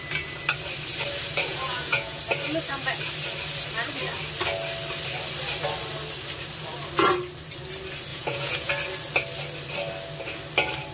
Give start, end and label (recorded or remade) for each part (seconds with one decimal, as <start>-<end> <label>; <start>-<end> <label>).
0.0-1.5 recorded; 1.5-2.2 remade; 2.2-8.1 recorded; 8.1-8.7 remade; 8.7-10.9 recorded